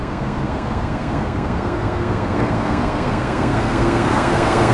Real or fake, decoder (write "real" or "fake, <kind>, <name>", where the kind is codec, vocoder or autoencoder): fake, codec, SNAC